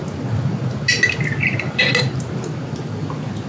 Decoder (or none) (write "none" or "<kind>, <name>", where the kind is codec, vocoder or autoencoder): none